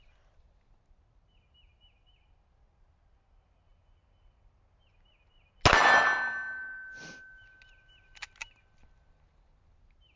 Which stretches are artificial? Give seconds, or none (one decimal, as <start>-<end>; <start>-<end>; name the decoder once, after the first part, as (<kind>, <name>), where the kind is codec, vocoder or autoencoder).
none